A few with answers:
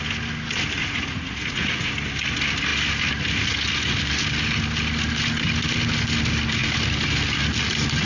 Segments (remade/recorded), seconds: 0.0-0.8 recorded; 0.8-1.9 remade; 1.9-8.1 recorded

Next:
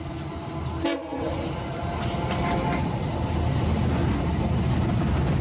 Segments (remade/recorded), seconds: 0.0-5.4 recorded

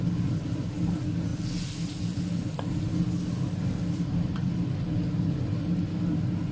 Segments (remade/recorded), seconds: 0.0-6.5 recorded

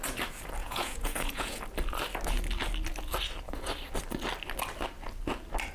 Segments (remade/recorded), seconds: 0.0-0.6 recorded; 0.6-1.6 remade; 1.6-5.7 recorded

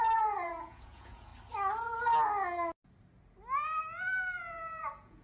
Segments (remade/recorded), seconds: 0.0-1.3 remade; 1.3-4.4 recorded; 4.4-5.2 remade

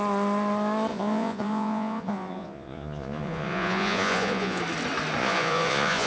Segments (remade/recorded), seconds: 0.0-0.9 recorded; 0.9-4.6 remade; 4.6-5.2 recorded; 5.2-6.1 remade

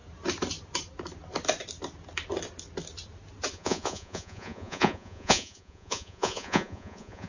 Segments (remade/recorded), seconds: 0.0-3.5 recorded; 3.5-7.3 remade